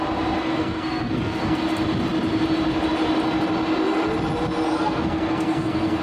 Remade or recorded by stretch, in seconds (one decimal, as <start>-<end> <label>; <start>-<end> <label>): 0.0-0.5 recorded; 0.5-1.6 remade; 1.6-4.7 recorded; 4.7-6.0 remade